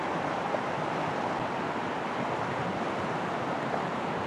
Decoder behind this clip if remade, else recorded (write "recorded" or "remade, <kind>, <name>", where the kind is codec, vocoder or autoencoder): recorded